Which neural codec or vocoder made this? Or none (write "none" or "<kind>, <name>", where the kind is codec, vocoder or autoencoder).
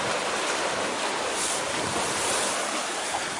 none